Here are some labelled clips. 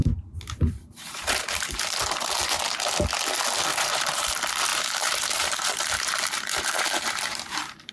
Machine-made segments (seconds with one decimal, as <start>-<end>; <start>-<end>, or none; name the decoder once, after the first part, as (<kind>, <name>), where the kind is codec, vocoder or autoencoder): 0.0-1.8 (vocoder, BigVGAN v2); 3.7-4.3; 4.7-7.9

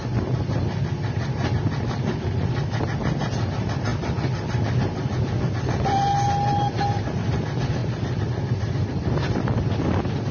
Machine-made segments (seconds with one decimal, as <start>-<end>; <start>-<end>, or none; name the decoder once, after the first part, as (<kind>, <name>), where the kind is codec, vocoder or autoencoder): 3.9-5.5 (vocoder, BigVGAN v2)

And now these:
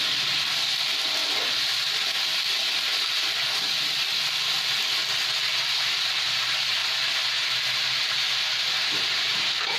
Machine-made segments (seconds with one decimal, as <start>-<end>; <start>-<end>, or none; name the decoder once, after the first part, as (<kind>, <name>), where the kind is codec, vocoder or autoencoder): 0.0-1.2 (vocoder, BigVGAN v2); 6.0-9.8

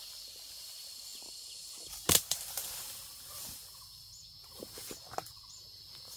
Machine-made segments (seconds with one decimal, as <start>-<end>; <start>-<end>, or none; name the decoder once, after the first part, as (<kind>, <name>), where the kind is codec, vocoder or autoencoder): none

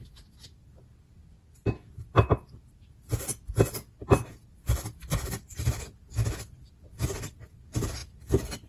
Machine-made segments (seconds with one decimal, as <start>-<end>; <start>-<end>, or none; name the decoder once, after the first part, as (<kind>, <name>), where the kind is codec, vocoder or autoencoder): none

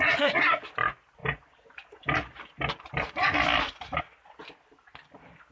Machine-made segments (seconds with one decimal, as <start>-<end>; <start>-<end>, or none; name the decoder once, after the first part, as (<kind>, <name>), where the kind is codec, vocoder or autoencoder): 1.2-4.0 (vocoder, BigVGAN v2)